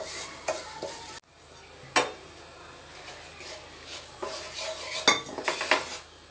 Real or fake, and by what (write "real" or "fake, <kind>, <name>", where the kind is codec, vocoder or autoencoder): real